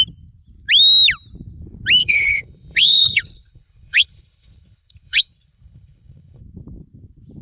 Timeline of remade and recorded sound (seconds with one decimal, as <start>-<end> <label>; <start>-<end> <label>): 0.0-2.0 recorded; 2.0-6.4 remade; 6.4-7.4 recorded